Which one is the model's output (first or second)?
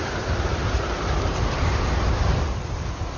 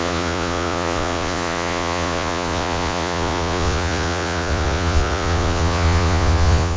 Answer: second